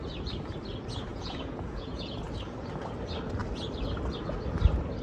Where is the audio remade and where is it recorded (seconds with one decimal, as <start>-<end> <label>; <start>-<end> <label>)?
0.0-1.1 recorded; 1.1-2.2 remade; 2.2-5.0 recorded